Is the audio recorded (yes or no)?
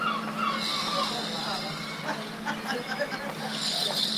yes